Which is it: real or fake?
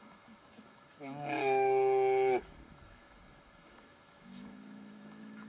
fake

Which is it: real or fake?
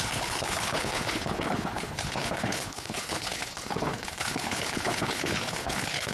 fake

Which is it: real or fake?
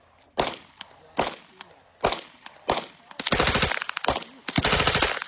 real